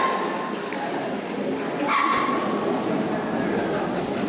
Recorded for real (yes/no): yes